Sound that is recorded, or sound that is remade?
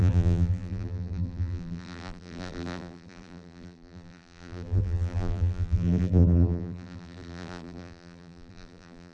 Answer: remade